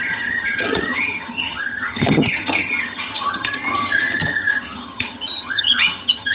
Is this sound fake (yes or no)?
yes